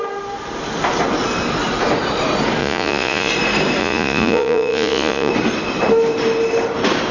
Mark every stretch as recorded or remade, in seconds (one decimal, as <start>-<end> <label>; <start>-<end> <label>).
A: 0.0-2.6 recorded; 2.6-3.3 remade; 3.3-3.8 recorded; 3.8-5.3 remade; 5.3-7.1 recorded